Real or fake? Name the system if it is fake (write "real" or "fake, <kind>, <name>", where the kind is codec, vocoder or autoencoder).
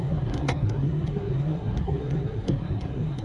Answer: fake, codec, SNAC